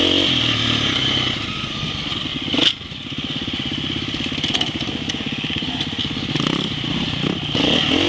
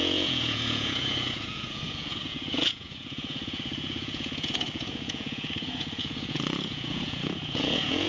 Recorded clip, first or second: first